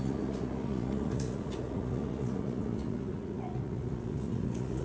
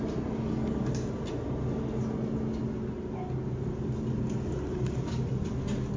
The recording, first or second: second